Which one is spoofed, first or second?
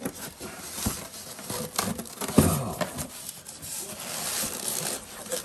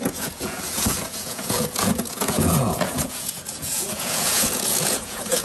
second